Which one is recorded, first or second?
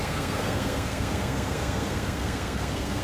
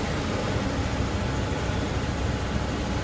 second